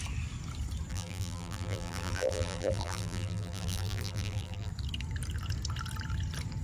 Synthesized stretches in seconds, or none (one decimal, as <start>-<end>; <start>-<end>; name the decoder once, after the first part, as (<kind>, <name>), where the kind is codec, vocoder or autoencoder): 0.9-4.7 (vocoder, BigVGAN v2)